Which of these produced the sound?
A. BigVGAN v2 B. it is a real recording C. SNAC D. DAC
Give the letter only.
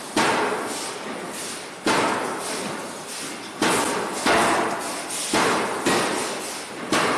B